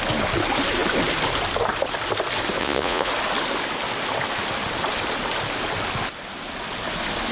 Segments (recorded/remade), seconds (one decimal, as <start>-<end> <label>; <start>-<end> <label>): 0.0-2.6 recorded; 2.6-3.1 remade; 3.1-7.3 recorded